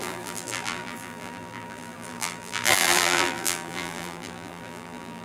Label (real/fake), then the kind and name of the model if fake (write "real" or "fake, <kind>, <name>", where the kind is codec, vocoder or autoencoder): fake, vocoder, BigVGAN v2